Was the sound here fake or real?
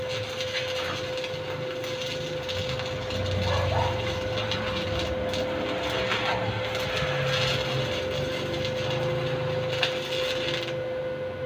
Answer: real